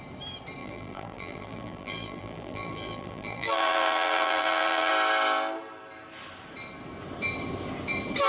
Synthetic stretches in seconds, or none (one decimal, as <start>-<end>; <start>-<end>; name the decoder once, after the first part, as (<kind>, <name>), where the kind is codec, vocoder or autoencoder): 0.6-4.9 (vocoder, BigVGAN v2)